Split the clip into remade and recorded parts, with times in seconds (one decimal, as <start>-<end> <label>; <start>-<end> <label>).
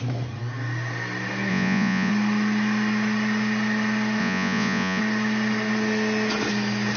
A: 0.0-1.5 recorded; 1.5-2.1 remade; 2.1-4.2 recorded; 4.2-5.0 remade; 5.0-7.0 recorded